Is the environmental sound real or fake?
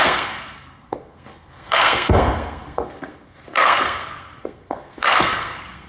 fake